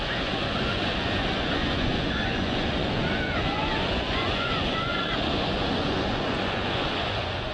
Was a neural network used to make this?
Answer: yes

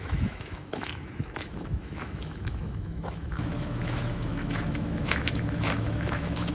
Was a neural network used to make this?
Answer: yes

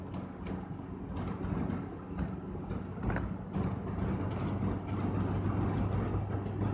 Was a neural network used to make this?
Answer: no